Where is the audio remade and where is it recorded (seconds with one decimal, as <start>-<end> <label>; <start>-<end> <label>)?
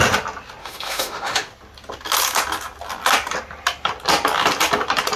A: 0.0-0.6 recorded; 0.6-1.5 remade; 1.5-5.2 recorded